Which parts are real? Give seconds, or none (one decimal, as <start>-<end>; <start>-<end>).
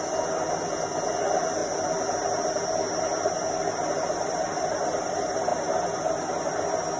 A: 0.0-7.0